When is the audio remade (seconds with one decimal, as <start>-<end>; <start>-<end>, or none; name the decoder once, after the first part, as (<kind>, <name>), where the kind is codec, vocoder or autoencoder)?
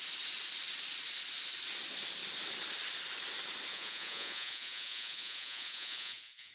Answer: 3.7-6.5 (vocoder, Vocos)